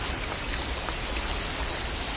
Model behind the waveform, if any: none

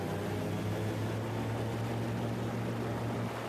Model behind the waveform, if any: none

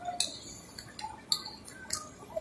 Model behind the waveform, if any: none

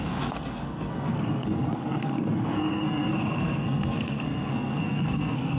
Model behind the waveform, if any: codec, SNAC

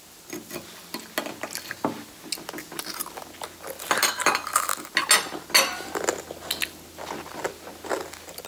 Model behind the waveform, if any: none